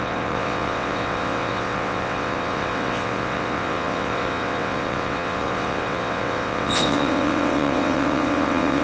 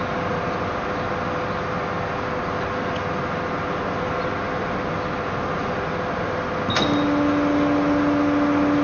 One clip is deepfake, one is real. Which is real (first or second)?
second